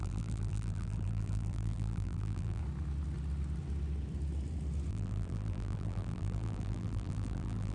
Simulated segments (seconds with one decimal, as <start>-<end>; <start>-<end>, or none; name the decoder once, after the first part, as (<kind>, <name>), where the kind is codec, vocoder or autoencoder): 0.0-2.6 (vocoder, BigVGAN v2); 4.9-7.7